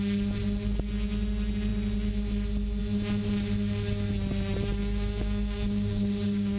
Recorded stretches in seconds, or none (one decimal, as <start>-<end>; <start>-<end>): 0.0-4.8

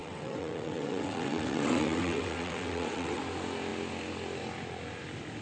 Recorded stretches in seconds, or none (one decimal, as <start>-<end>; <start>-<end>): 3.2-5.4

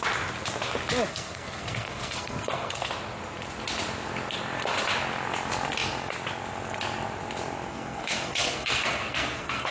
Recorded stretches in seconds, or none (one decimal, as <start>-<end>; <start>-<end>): 0.0-1.1; 2.9-7.7